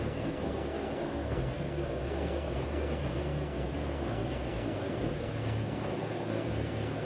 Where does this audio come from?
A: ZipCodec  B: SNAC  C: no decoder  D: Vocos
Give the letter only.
B